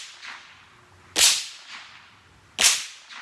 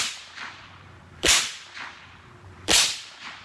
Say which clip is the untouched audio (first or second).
first